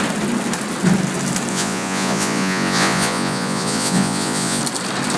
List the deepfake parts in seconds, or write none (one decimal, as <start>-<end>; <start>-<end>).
1.5-4.6